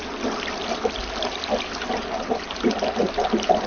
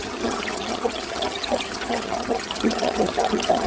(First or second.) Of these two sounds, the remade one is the second